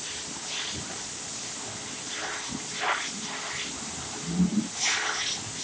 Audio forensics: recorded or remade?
recorded